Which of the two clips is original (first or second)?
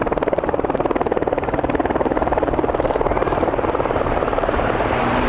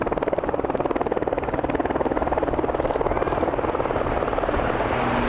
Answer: second